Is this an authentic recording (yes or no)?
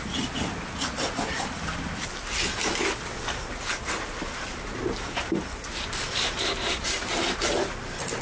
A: yes